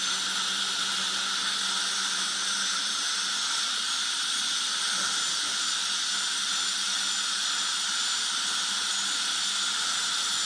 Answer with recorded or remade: recorded